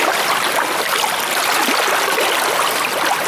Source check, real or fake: real